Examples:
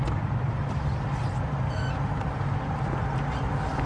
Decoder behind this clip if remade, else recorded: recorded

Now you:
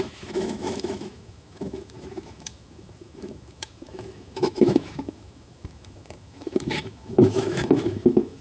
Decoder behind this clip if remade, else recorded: remade, autoencoder, DAC-VAE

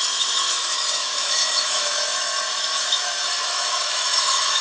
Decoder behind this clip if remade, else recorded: remade, autoencoder, DAC-VAE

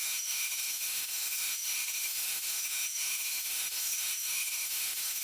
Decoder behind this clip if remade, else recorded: remade, autoencoder, DAC-VAE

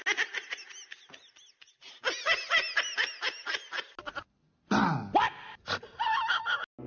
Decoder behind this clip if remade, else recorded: recorded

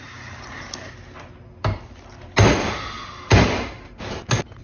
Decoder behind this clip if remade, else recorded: recorded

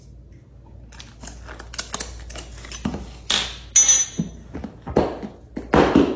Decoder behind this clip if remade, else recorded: recorded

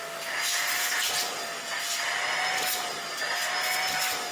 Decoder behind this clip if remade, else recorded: recorded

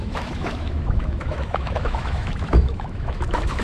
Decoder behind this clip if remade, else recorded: remade, autoencoder, DAC-VAE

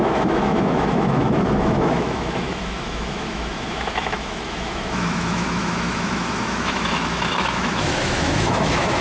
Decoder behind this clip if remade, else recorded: remade, autoencoder, DAC-VAE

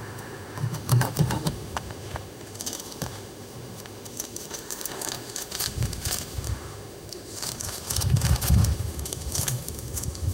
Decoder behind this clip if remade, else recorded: remade, autoencoder, DAC-VAE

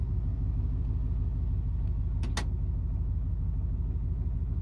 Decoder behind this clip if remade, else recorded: recorded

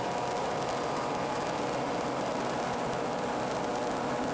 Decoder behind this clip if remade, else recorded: recorded